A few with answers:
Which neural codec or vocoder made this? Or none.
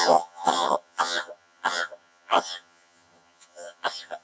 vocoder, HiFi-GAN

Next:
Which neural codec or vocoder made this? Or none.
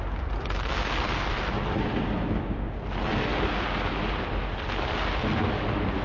none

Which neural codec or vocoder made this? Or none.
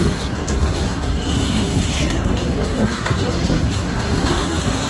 codec, SNAC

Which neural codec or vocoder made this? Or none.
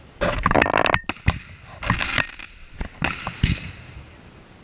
none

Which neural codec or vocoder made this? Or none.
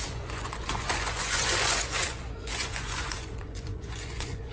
vocoder, Vocos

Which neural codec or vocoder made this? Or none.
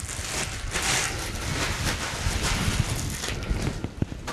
none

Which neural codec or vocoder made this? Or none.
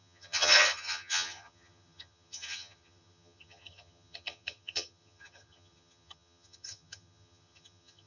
vocoder, HiFi-GAN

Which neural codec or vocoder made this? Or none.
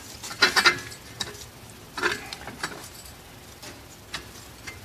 vocoder, BigVGAN v2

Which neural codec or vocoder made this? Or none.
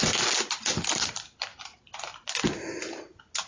none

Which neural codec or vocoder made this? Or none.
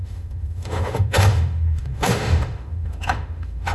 autoencoder, DAC-VAE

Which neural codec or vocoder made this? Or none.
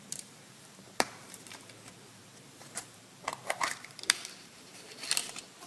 vocoder, BigVGAN v2